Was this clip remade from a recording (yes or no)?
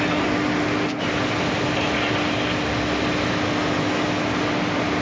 no